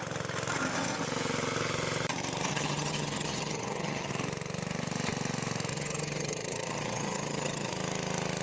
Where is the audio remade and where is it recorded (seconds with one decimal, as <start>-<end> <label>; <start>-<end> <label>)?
0.0-2.5 recorded; 2.5-4.1 remade; 4.1-5.7 recorded; 5.7-7.7 remade; 7.7-8.4 recorded